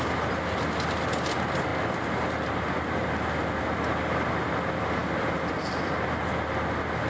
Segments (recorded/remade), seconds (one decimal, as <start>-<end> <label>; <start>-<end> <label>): 0.0-7.1 recorded